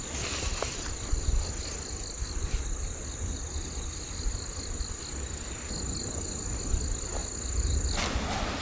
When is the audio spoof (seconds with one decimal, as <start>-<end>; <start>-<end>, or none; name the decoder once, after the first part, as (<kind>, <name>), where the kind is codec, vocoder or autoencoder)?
none